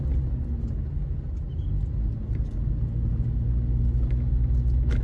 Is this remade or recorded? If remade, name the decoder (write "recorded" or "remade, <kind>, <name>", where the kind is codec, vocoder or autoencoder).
recorded